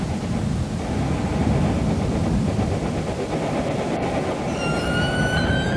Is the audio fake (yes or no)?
no